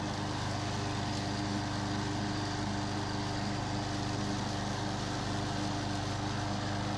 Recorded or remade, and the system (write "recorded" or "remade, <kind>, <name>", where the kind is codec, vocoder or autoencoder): recorded